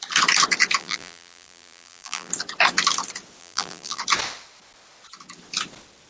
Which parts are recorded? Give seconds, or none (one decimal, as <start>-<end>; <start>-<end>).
0.0-0.8; 2.3-3.4; 4.0-6.1